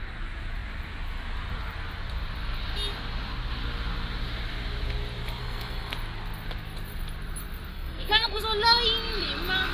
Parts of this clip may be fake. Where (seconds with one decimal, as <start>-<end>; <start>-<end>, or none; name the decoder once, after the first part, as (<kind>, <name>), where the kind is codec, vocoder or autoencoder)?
5.4-5.9 (codec, SNAC); 7.7-8.4